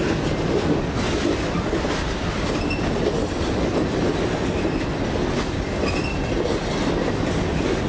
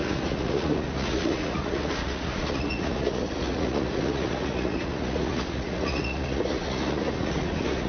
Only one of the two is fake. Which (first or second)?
second